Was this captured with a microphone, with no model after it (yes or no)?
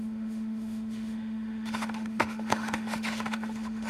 no